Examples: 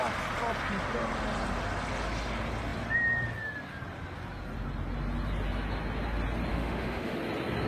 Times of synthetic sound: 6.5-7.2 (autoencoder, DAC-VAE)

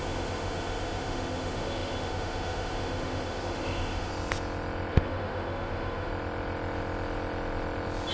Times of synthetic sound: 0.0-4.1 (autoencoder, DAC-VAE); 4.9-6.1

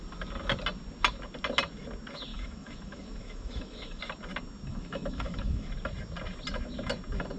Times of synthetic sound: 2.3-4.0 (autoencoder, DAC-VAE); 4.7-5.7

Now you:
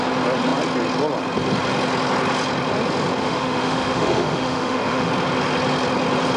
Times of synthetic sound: 3.2-5.1 (autoencoder, DAC-VAE)

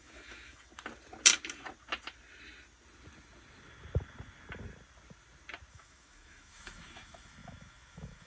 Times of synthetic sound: 0.0-0.7 (autoencoder, DAC-VAE); 5.7-8.3

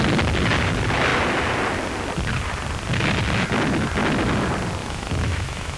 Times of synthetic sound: 4.8-5.8 (autoencoder, DAC-VAE)

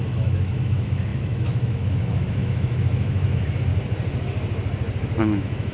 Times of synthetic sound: 0.0-3.7 (autoencoder, DAC-VAE); 5.2-5.7